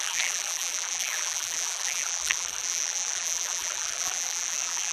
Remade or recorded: remade